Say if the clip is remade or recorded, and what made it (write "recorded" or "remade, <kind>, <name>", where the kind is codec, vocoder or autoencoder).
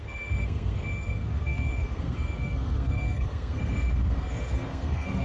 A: remade, codec, SNAC